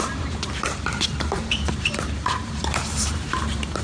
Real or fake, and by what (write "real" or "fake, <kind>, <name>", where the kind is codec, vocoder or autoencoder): fake, vocoder, BigVGAN v2